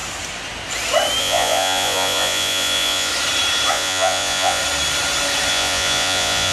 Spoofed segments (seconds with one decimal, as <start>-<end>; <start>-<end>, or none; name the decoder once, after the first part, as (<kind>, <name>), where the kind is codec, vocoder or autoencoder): 1.2-3.1 (vocoder, Vocos); 3.7-4.6; 5.5-6.5